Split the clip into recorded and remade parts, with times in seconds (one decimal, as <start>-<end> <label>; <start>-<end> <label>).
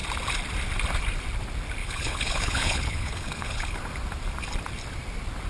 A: 0.0-1.8 recorded; 1.8-3.8 remade; 3.8-5.5 recorded